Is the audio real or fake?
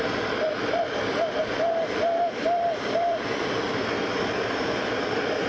real